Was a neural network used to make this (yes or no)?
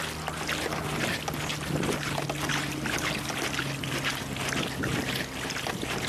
no